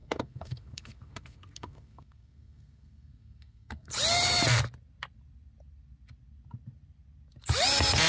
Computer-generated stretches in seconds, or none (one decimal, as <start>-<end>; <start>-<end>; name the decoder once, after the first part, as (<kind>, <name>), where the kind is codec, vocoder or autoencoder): 0.0-3.9 (codec, SNAC)